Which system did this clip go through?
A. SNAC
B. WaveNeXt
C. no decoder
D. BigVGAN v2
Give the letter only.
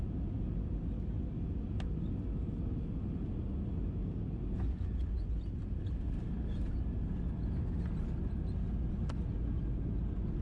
C